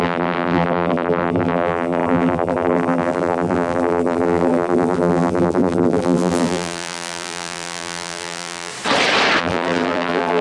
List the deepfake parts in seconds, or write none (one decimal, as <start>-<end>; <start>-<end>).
0.0-8.7; 9.4-10.4